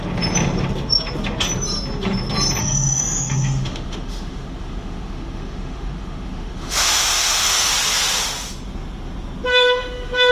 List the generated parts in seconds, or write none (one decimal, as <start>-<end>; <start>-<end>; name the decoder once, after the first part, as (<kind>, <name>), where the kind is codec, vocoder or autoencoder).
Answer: 2.6-7.7 (autoencoder, DAC-VAE); 9.5-10.3